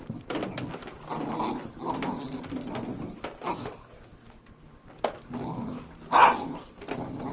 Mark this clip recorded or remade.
recorded